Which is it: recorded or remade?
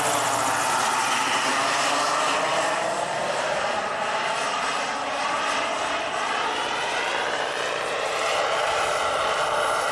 recorded